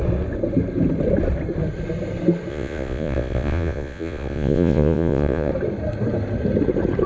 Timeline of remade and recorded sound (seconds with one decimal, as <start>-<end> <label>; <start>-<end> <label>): 0.0-2.5 recorded; 2.5-5.5 remade; 5.5-7.1 recorded